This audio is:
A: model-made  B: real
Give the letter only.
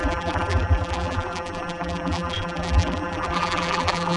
A